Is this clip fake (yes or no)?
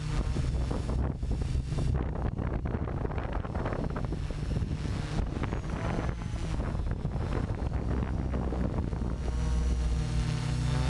no